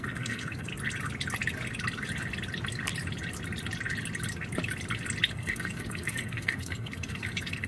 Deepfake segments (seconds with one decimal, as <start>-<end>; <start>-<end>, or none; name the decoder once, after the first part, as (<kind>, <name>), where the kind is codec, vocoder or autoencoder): 0.0-0.7 (codec, SNAC); 5.3-7.7